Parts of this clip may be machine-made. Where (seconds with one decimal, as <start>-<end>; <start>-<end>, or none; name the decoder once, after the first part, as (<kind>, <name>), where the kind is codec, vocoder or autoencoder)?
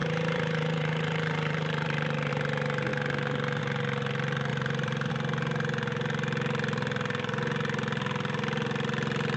0.0-2.3 (vocoder, BigVGAN v2); 4.5-5.1